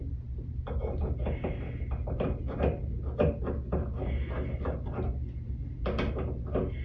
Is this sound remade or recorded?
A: recorded